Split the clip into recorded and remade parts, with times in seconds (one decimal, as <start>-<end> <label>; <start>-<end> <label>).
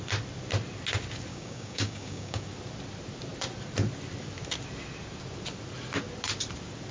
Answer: 0.0-1.3 recorded; 1.3-2.5 remade; 2.5-6.9 recorded